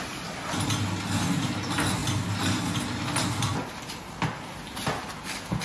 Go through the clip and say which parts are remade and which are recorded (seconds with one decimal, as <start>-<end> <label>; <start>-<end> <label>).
0.0-5.6 recorded